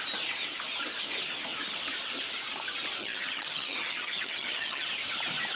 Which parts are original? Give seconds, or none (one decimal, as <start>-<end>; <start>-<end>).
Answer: 0.0-3.0; 4.9-5.6